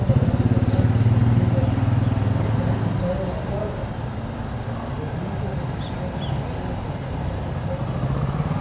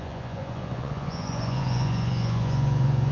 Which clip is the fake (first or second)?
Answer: second